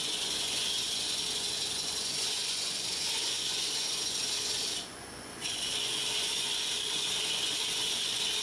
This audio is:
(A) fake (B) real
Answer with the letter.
A